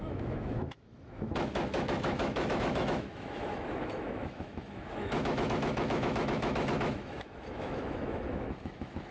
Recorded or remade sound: remade